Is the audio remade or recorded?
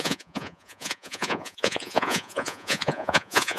remade